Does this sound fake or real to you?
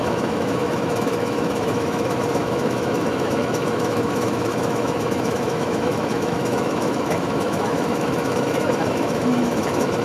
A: fake